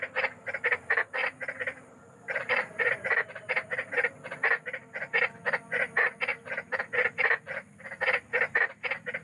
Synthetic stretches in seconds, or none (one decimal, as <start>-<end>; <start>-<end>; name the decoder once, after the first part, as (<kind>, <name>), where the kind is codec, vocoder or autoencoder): 1.2-3.7 (vocoder, BigVGAN v2); 6.3-6.8